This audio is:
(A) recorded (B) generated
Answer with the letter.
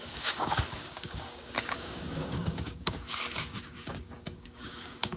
B